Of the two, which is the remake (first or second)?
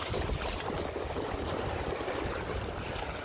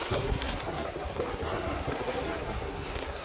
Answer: second